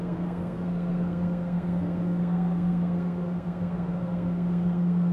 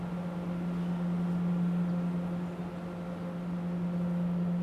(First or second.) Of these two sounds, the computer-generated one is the first